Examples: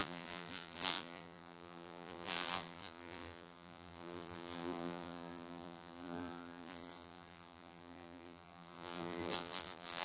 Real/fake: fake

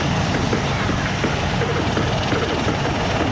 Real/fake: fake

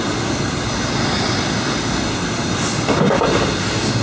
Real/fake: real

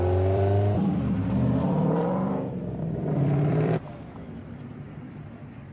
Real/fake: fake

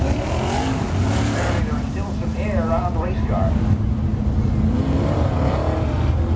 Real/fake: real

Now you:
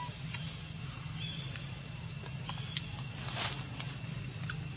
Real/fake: real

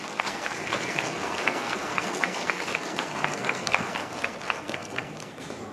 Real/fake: fake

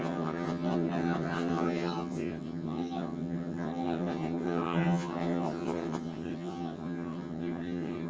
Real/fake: fake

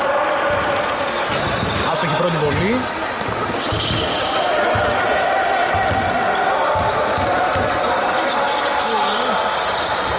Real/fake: real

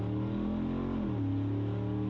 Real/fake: real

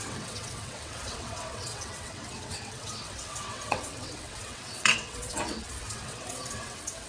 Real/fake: fake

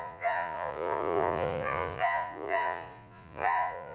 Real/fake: fake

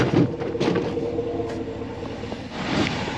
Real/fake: real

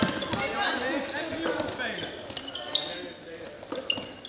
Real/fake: real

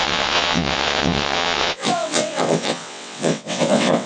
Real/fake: fake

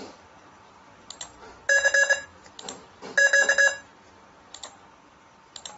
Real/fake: real